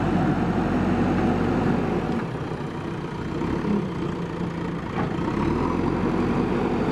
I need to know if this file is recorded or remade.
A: recorded